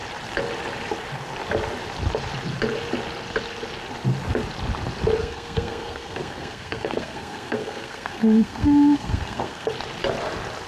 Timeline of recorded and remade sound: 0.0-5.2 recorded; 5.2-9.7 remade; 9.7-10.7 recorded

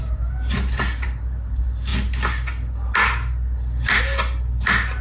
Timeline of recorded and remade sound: 0.0-5.0 recorded

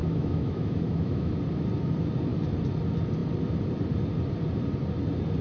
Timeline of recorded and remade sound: 0.0-1.3 remade; 1.3-5.4 recorded